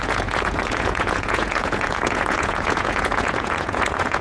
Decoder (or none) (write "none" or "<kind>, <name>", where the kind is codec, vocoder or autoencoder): vocoder, Vocos